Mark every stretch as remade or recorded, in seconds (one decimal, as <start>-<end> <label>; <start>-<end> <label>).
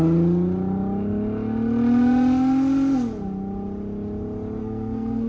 0.0-4.6 recorded; 4.6-5.3 remade